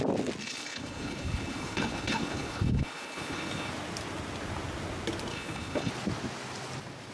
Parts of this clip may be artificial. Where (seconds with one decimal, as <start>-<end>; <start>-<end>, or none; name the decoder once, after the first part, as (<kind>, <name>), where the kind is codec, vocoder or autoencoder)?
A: 0.4-3.7 (codec, HILCodec); 5.3-5.9